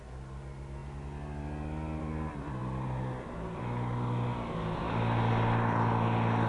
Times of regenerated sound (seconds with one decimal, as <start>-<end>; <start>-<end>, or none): none